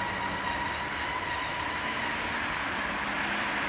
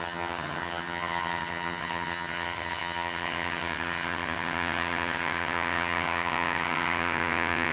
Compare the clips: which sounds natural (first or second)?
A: first